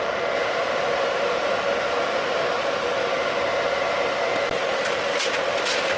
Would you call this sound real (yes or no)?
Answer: yes